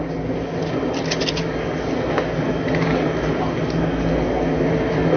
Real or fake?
real